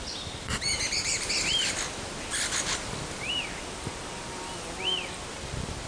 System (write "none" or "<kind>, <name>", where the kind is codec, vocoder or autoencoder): none